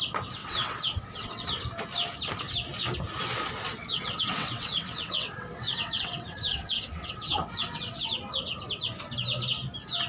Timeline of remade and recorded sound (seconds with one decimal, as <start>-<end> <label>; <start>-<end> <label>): 0.0-0.4 recorded; 0.4-1.5 remade; 1.5-3.7 recorded; 3.7-8.1 remade; 8.1-10.1 recorded